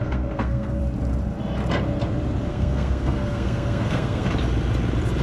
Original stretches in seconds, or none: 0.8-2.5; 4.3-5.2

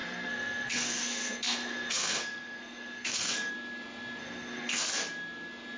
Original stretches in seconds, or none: 3.5-4.2; 4.9-5.8

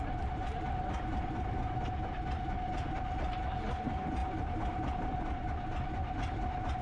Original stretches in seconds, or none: 0.0-6.8

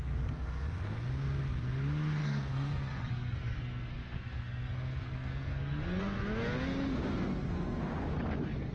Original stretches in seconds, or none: 0.0-2.2; 6.0-7.1; 7.8-8.7

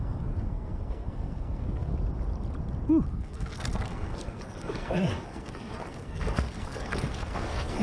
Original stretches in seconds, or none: 1.9-3.1

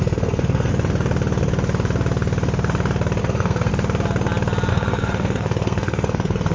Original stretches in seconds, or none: 0.7-3.2; 3.7-4.7

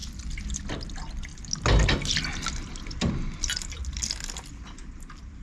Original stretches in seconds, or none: 0.0-5.4